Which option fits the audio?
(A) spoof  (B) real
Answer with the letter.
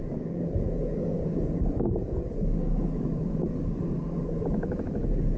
A